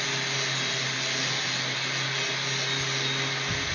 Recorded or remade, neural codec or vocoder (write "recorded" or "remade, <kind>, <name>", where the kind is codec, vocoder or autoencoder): recorded